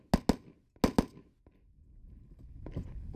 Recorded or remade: recorded